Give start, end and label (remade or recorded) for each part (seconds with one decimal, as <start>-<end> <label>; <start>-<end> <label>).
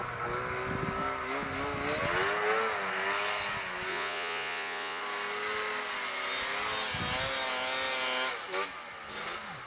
0.0-3.9 recorded; 3.9-5.0 remade; 5.0-9.7 recorded